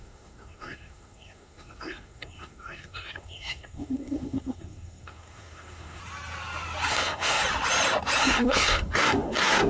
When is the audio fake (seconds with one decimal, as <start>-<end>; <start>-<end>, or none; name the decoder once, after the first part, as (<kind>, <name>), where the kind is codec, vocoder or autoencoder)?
0.0-6.0 (codec, SNAC); 6.9-7.4; 8.2-9.7